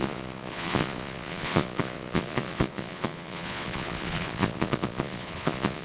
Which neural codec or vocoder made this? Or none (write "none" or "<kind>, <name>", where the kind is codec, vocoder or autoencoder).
vocoder, Vocos